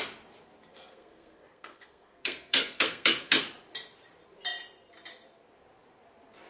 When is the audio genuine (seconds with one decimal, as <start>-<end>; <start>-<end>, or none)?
0.0-0.7; 3.4-6.5